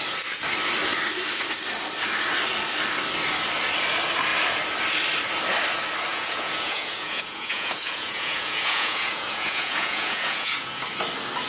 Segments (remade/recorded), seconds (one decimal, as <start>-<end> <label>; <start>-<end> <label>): 0.0-6.1 recorded; 6.1-10.8 remade; 10.8-11.5 recorded